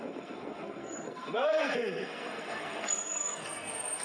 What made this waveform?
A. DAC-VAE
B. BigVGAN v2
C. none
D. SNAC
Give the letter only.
D